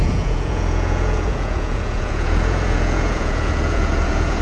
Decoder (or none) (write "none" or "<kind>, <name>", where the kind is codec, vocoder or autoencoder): vocoder, Vocos